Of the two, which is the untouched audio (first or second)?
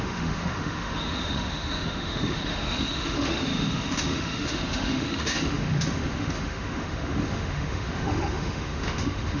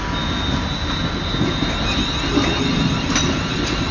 second